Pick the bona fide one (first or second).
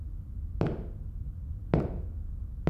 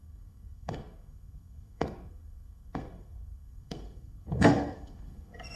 first